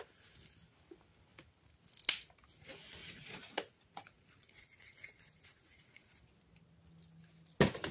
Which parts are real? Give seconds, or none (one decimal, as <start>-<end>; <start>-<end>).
0.0-3.0; 6.1-7.9